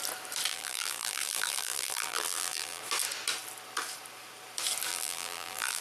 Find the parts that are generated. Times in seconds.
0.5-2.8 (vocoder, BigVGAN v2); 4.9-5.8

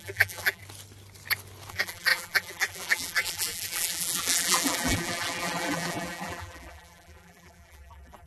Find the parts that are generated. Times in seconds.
0.0-0.6 (vocoder, BigVGAN v2); 1.7-8.3

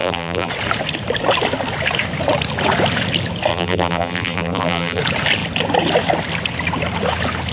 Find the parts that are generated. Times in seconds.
0.0-0.5 (vocoder, BigVGAN v2); 3.5-5.0

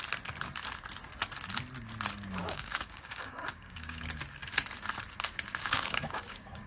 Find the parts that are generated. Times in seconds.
2.4-4.0 (codec, DAC); 5.6-6.7

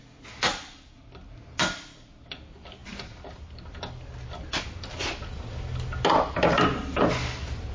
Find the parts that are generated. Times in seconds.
none

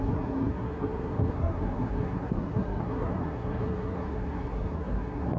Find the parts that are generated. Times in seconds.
0.0-5.4 (codec, SNAC)

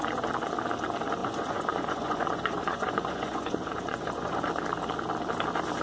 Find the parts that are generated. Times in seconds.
1.2-4.5 (vocoder, Vocos)

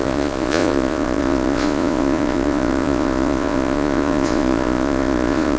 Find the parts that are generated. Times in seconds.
0.0-5.6 (vocoder, Vocos)